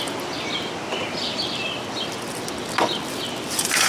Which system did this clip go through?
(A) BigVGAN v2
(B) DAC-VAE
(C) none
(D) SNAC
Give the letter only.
C